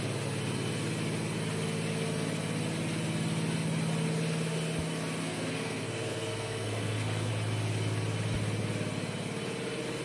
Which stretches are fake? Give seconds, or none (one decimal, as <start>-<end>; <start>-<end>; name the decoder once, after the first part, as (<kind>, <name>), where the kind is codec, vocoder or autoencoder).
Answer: 5.2-7.3 (codec, SNAC)